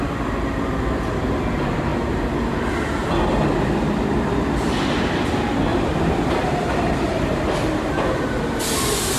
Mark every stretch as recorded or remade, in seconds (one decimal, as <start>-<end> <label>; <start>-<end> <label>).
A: 0.0-5.7 recorded; 5.7-7.4 remade; 7.4-9.2 recorded